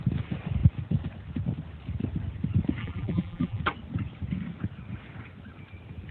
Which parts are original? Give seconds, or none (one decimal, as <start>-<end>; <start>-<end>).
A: 0.0-2.8; 3.6-6.1